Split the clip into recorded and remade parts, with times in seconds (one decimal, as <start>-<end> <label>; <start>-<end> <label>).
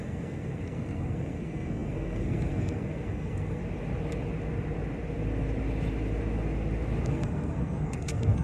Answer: 0.0-3.6 remade; 3.6-7.1 recorded; 7.1-8.4 remade